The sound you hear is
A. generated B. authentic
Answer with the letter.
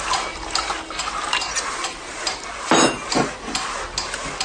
B